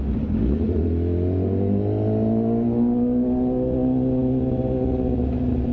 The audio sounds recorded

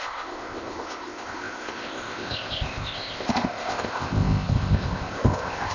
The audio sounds remade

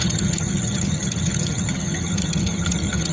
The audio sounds remade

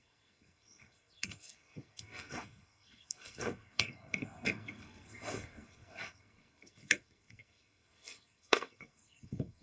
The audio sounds remade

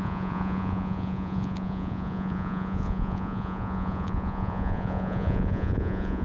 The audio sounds remade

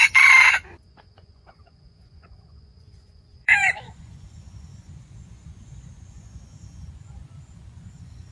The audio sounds remade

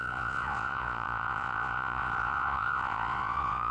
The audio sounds remade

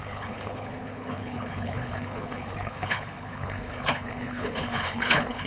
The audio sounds remade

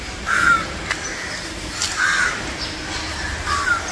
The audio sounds recorded